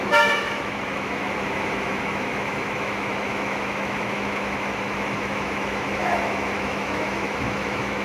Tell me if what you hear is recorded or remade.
remade